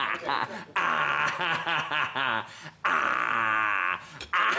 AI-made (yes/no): no